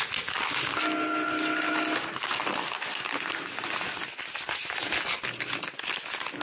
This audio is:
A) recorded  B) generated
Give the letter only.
A